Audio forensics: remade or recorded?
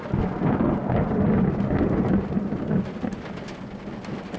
recorded